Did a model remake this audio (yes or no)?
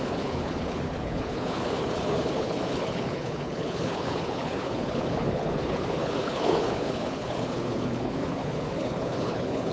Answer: yes